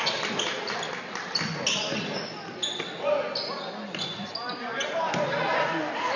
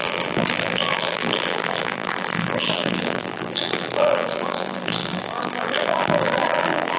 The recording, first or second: first